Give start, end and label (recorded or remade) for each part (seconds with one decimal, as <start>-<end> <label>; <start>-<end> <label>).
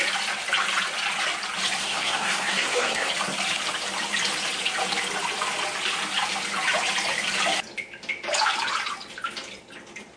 0.0-1.8 recorded; 1.8-3.1 remade; 3.1-10.2 recorded